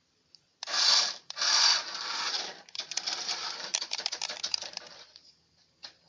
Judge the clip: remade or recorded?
remade